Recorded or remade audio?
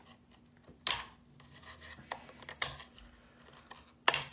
recorded